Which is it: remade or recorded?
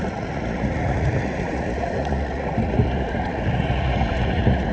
remade